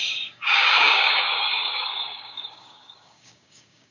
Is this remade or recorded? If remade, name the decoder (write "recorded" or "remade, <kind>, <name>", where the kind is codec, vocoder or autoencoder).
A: remade, codec, DAC